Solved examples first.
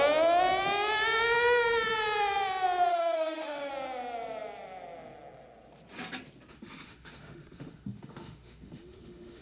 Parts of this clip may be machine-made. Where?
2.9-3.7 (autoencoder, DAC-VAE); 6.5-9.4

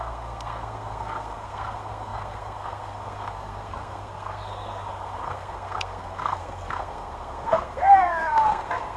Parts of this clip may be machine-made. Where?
0.0-9.0 (codec, SNAC)

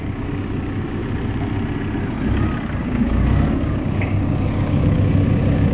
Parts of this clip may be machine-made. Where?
0.0-1.0 (codec, DAC); 2.8-5.7

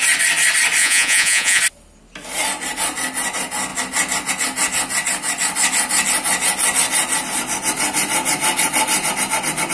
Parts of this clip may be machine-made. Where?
0.8-1.6 (vocoder, Vocos)

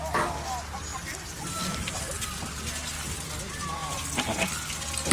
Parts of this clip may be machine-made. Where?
0.9-2.5 (vocoder, BigVGAN v2); 3.8-5.1

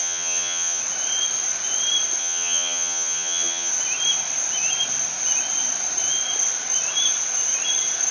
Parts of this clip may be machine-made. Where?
0.0-0.8 (vocoder, HiFi-GAN); 2.2-3.7

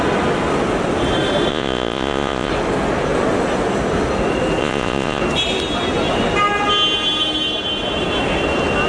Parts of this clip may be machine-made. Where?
1.5-2.5 (vocoder, Vocos); 4.6-5.2

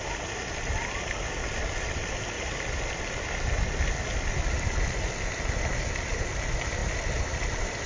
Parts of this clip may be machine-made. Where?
none